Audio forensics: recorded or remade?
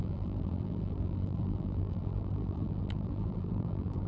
remade